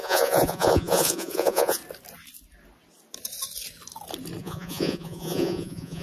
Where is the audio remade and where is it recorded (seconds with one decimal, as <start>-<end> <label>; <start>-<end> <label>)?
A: 0.0-1.8 remade; 1.8-4.4 recorded; 4.4-6.0 remade